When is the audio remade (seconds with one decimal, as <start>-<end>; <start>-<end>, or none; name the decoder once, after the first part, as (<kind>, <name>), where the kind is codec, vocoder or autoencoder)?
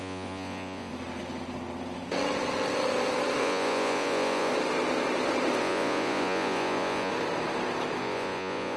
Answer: 0.0-0.9 (vocoder, Vocos); 3.4-4.5; 5.6-7.1; 8.0-8.8